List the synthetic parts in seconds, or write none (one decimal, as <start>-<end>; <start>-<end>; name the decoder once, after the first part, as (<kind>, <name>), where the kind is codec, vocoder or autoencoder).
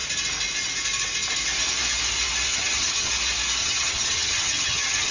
2.5-3.1 (vocoder, HiFi-GAN); 3.6-5.1